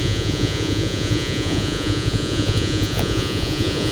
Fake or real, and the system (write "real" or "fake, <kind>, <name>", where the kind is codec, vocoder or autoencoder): fake, vocoder, Vocos